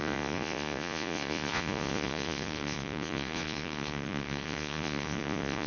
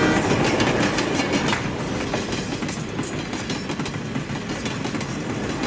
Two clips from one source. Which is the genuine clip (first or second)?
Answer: second